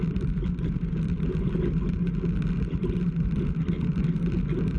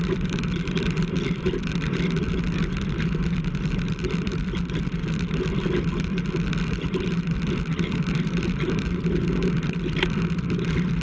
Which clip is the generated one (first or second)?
second